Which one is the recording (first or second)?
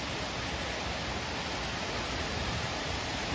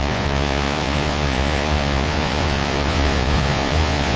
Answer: first